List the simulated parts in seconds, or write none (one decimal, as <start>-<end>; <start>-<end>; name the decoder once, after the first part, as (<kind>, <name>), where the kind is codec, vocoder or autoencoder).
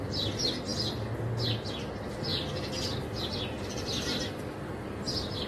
none